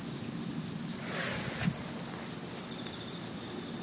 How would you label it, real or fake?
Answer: real